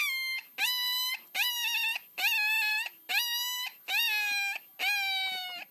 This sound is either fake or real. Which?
real